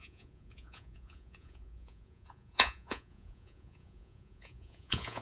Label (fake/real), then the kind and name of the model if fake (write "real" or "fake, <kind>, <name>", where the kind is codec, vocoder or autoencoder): fake, vocoder, Vocos